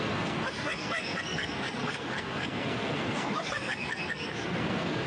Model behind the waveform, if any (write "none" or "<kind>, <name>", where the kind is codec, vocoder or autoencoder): codec, SNAC